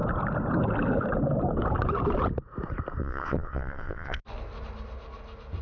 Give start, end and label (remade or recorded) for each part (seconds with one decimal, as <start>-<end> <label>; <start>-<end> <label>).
0.0-3.0 recorded; 3.0-4.2 remade; 4.2-5.6 recorded